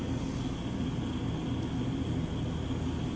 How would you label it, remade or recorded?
recorded